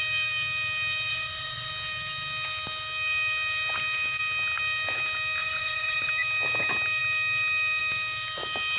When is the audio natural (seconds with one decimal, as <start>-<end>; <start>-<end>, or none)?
0.0-1.1; 1.7-5.4; 6.1-8.8